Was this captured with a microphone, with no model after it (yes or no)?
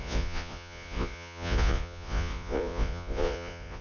no